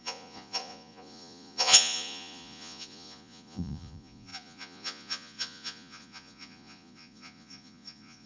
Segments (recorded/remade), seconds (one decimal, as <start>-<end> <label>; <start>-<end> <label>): 0.0-8.3 remade

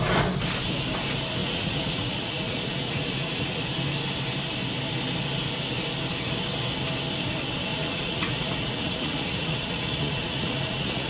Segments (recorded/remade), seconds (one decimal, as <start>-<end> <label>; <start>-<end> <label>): 0.0-1.4 recorded; 1.4-3.6 remade; 3.6-7.7 recorded; 7.7-11.1 remade

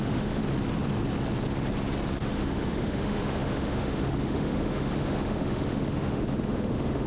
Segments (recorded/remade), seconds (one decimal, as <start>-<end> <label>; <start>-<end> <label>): 0.0-0.4 remade; 0.4-2.2 recorded; 2.2-7.1 remade

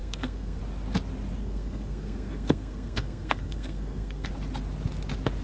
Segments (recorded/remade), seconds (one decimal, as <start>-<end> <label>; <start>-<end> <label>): 0.0-0.6 remade; 0.6-1.4 recorded; 1.4-4.3 remade; 4.3-5.4 recorded

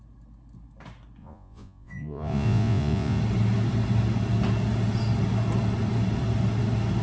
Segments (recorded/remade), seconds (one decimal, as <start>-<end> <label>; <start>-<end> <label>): 0.0-1.2 recorded; 1.2-3.2 remade; 3.2-7.0 recorded

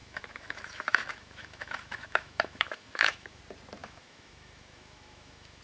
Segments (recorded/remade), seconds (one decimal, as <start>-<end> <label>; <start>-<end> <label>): 0.0-3.4 remade; 3.4-3.8 recorded; 3.8-5.6 remade